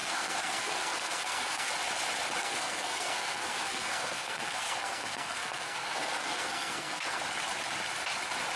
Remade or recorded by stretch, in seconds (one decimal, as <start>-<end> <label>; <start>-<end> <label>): 0.0-1.7 remade; 1.7-2.4 recorded; 2.4-7.2 remade; 7.2-8.6 recorded